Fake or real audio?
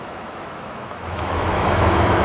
fake